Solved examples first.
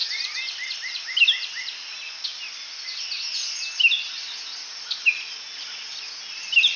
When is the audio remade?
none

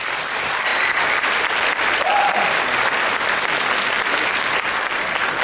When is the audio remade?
0.7-1.5